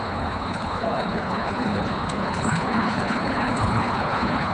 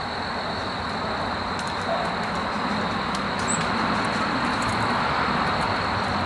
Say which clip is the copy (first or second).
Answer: first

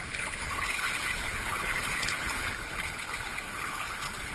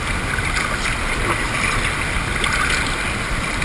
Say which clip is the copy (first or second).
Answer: first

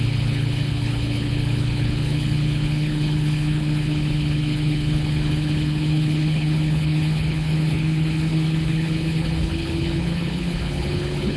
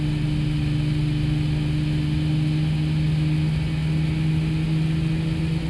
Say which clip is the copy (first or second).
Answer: first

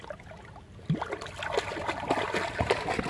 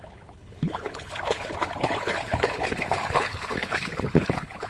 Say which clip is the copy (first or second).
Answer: second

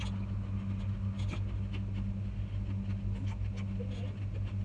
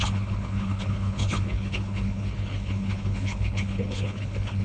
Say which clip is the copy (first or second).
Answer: second